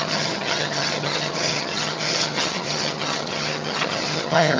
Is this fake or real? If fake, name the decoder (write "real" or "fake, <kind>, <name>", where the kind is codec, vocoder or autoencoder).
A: fake, vocoder, HiFi-GAN